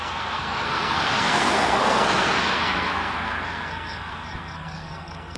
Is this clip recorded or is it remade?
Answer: remade